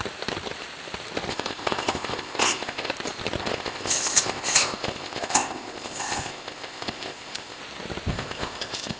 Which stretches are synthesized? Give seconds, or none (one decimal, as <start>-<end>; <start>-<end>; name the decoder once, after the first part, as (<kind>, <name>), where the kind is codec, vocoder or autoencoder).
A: 1.3-2.9 (codec, ZipCodec); 3.4-7.6; 8.1-9.0